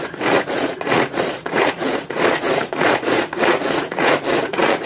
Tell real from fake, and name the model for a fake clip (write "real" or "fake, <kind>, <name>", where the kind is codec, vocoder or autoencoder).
fake, vocoder, Vocos